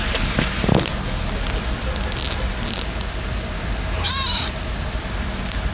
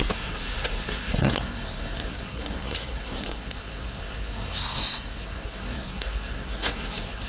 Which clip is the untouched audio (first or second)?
first